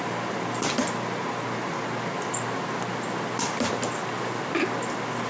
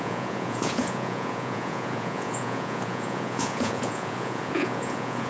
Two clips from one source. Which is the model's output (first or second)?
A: second